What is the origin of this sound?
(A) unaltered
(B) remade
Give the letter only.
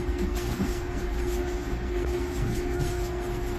B